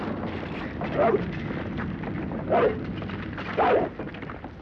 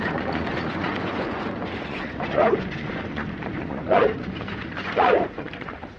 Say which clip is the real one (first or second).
first